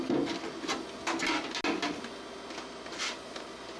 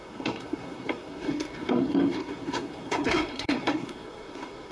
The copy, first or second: second